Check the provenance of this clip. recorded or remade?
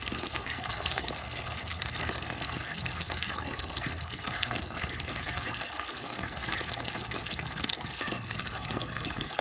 remade